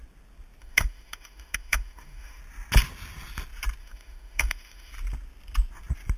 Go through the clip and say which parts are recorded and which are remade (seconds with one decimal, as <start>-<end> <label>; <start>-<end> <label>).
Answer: 0.0-0.6 recorded; 0.6-2.4 remade; 2.4-3.8 recorded; 3.8-4.9 remade; 4.9-6.2 recorded